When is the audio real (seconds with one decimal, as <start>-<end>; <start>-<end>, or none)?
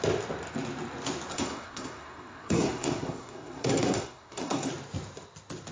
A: 0.0-1.3; 4.7-5.7